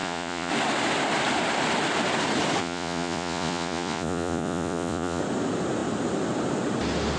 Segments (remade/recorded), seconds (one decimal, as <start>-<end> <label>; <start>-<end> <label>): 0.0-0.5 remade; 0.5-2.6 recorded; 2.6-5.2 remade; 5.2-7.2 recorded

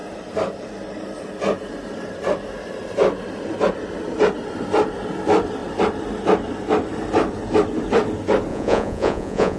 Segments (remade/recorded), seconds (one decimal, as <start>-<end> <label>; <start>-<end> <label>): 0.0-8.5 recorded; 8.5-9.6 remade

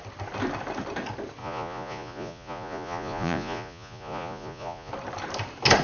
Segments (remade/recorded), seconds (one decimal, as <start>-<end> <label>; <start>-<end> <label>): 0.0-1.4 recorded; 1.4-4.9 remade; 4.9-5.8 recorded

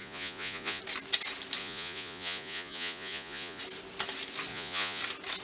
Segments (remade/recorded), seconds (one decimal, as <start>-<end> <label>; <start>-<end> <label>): 0.0-0.8 remade; 0.8-1.6 recorded; 1.6-3.6 remade; 3.6-4.5 recorded; 4.5-5.0 remade; 5.0-5.4 recorded

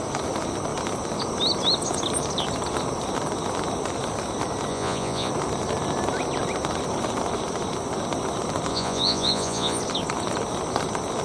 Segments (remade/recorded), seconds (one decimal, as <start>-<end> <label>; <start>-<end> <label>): 0.0-4.7 recorded; 4.7-5.3 remade; 5.3-8.7 recorded; 8.7-9.8 remade; 9.8-11.2 recorded